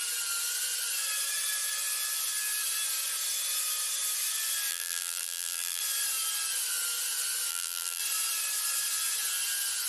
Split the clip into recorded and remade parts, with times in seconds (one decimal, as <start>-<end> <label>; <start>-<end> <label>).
0.0-4.7 recorded; 4.7-5.8 remade; 5.8-7.5 recorded; 7.5-8.0 remade; 8.0-9.9 recorded